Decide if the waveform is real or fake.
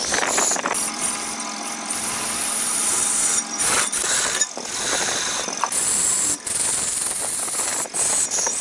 fake